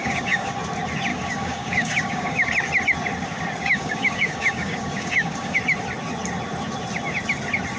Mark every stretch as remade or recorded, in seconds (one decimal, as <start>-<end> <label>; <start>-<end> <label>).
0.0-0.5 remade; 0.5-1.1 recorded; 1.1-2.5 remade; 2.5-3.6 recorded; 3.6-5.6 remade; 5.6-7.8 recorded